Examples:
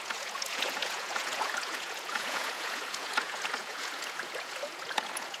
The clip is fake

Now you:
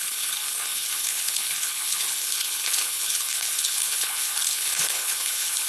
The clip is fake